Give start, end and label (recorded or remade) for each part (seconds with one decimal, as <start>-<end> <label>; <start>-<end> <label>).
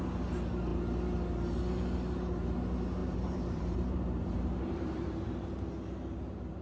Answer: 0.0-3.0 recorded; 3.0-5.5 remade; 5.5-6.6 recorded